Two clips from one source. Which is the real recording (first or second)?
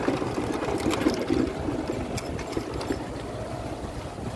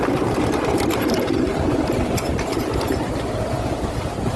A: first